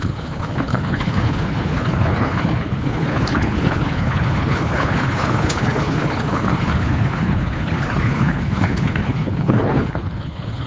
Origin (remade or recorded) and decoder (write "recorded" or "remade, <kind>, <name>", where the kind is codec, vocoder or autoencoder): remade, codec, HILCodec